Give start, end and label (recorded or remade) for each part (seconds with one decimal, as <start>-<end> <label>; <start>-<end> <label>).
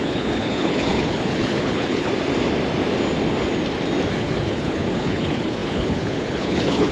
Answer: 0.0-2.1 remade; 2.1-4.1 recorded; 4.1-6.9 remade